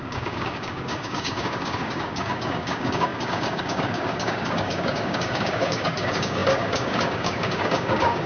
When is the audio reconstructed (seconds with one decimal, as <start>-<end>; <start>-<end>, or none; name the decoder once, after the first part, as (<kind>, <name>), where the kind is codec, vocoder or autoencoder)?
0.0-8.3 (codec, DAC)